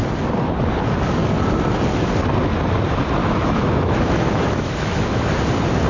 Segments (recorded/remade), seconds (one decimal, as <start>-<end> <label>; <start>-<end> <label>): 0.0-3.2 recorded; 3.2-5.3 remade; 5.3-5.9 recorded

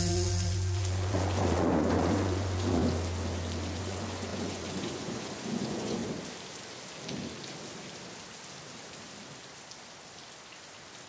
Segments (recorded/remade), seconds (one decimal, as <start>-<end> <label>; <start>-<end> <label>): 0.0-2.8 remade; 2.8-3.8 recorded; 3.8-6.0 remade; 6.0-11.1 recorded

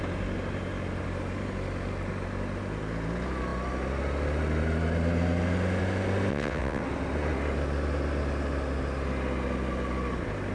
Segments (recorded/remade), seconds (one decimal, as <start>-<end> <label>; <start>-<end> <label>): 0.0-6.3 recorded; 6.3-6.8 remade; 6.8-10.5 recorded